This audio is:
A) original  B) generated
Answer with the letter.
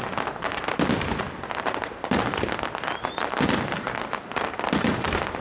A